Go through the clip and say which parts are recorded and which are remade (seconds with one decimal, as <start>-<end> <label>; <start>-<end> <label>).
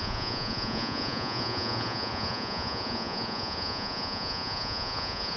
0.0-5.4 remade